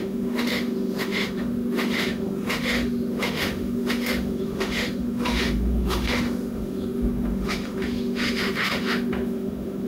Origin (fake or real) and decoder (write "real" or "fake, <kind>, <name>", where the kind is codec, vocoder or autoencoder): fake, autoencoder, DAC-VAE